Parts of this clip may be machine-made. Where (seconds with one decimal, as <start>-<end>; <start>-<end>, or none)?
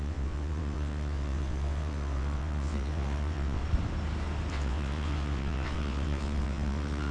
0.0-3.6; 4.5-7.1